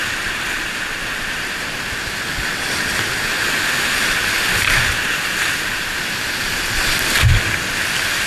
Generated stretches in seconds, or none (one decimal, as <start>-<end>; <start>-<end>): none